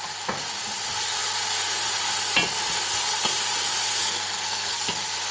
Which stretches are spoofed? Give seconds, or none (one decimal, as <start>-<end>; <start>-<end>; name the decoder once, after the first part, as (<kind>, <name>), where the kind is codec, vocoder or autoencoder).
4.0-4.8 (codec, SNAC)